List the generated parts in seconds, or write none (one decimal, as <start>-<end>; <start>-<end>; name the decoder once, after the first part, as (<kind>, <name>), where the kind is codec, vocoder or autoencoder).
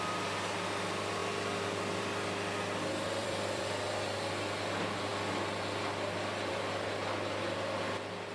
3.2-3.8 (vocoder, BigVGAN v2)